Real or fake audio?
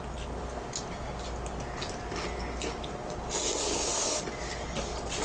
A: real